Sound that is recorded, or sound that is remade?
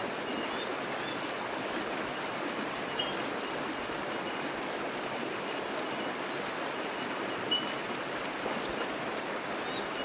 recorded